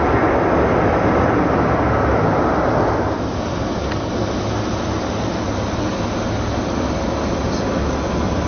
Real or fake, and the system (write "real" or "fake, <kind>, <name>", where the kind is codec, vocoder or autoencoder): real